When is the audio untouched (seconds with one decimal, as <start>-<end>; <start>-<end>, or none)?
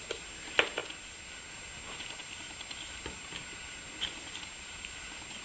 0.0-5.4